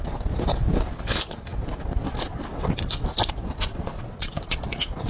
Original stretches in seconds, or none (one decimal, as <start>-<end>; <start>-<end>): 0.0-3.7; 4.6-5.1